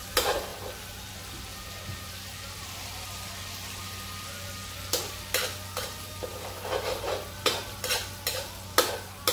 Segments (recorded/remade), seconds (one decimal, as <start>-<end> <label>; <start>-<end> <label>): 0.0-9.3 recorded